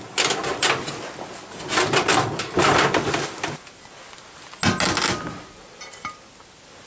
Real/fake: real